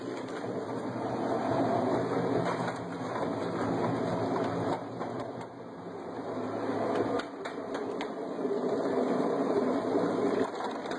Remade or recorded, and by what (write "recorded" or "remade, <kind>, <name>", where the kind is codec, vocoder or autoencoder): recorded